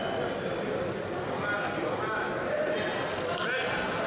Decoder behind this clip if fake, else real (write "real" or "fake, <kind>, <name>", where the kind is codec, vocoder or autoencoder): real